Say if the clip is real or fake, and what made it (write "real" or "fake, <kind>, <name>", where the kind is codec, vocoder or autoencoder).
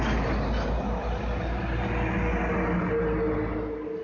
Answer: real